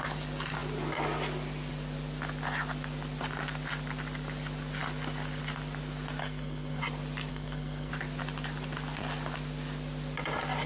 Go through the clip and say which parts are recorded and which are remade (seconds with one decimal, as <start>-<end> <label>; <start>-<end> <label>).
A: 0.0-6.2 recorded; 6.2-6.8 remade; 6.8-7.3 recorded; 7.3-7.9 remade; 7.9-10.7 recorded